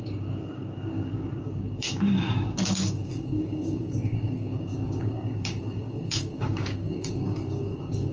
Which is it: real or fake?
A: fake